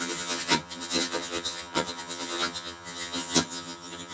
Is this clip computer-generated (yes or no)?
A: yes